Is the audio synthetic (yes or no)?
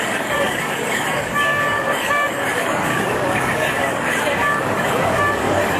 yes